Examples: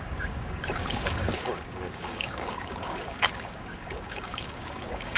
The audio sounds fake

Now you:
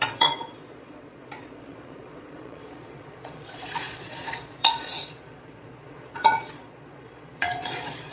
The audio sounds fake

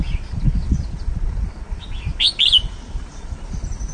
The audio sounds real